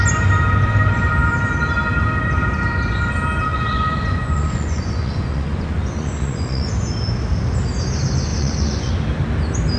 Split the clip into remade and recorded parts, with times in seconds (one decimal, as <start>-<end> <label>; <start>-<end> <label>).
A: 0.0-3.5 recorded; 3.5-6.7 remade; 6.7-8.3 recorded; 8.3-8.9 remade; 8.9-9.8 recorded